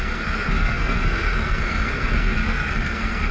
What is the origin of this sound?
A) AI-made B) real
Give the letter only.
A